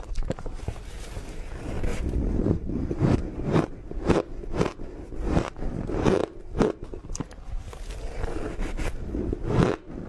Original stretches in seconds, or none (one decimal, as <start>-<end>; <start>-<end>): 0.0-1.9; 3.8-10.1